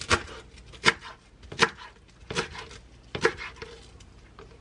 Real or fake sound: real